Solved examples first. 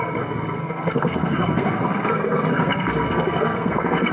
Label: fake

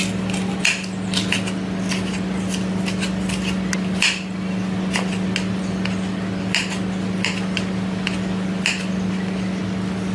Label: real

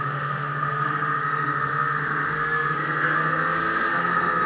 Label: fake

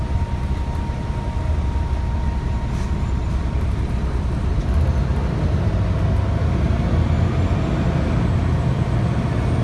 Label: real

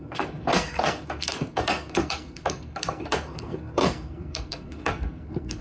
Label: fake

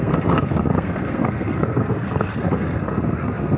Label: fake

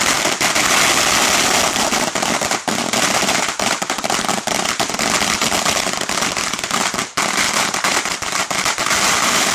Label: real